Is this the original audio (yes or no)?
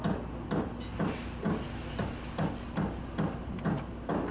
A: yes